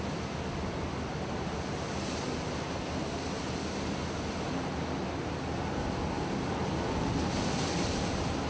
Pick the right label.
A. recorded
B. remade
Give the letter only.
A